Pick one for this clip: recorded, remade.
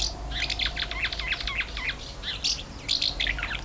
recorded